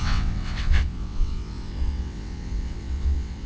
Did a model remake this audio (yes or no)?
yes